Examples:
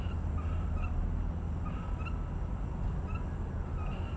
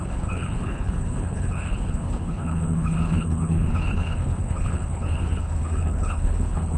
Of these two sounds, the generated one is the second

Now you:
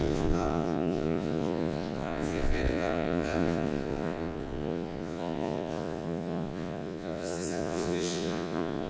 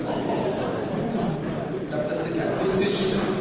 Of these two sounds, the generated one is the first